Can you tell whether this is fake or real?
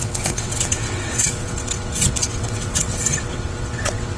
fake